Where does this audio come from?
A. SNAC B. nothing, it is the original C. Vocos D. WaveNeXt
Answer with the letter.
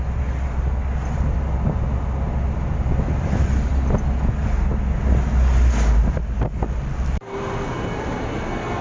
B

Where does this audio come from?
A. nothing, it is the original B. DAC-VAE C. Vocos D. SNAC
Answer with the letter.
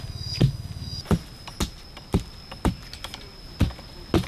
A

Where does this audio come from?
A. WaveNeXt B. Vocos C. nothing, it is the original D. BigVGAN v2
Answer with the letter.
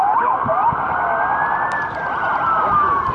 C